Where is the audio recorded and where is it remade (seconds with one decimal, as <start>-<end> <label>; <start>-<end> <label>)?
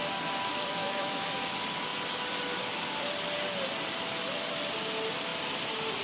0.0-0.8 recorded; 0.8-1.3 remade; 1.3-6.0 recorded